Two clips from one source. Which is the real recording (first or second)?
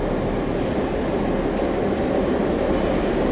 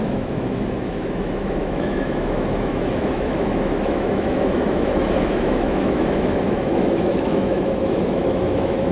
first